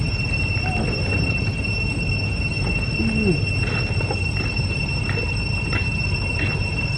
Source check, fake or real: real